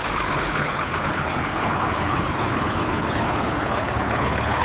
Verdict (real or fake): fake